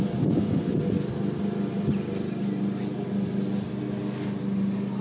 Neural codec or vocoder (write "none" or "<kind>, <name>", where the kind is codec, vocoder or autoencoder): none